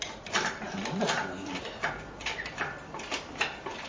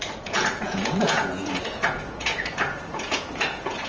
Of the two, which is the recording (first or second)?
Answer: first